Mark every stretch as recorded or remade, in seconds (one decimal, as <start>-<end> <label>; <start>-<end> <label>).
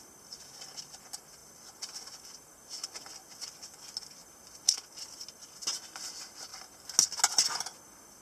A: 0.0-8.2 recorded